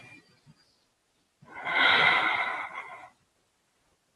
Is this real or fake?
real